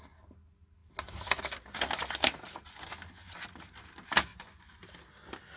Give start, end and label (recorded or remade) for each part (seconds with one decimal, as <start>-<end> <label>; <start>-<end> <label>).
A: 0.0-4.3 recorded; 4.3-4.8 remade; 4.8-5.6 recorded